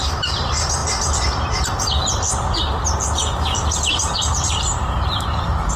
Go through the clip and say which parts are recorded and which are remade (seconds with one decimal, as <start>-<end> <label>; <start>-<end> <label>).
0.0-0.8 remade; 0.8-4.3 recorded; 4.3-5.8 remade